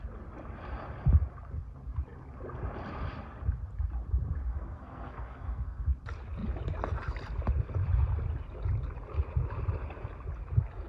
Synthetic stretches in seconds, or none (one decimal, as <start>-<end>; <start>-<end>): 4.5-5.8